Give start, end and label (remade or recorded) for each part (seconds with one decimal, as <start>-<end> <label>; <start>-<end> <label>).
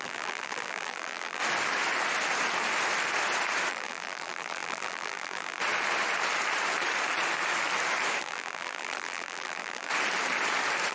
0.0-1.4 remade; 1.4-3.7 recorded; 3.7-5.6 remade; 5.6-8.2 recorded; 8.2-9.9 remade; 9.9-10.9 recorded